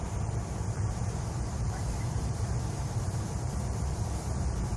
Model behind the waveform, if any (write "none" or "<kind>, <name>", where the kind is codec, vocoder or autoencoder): vocoder, BigVGAN v2